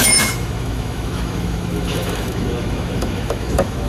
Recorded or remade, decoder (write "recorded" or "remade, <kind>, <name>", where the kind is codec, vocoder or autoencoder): remade, autoencoder, DAC-VAE